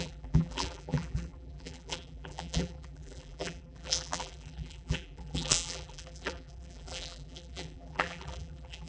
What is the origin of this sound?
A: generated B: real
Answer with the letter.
A